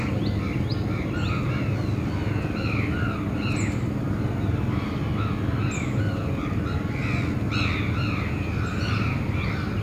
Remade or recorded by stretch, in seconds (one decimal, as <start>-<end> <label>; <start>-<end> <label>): 0.0-9.8 recorded